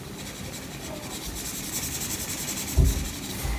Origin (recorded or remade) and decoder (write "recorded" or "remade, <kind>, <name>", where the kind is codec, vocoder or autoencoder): recorded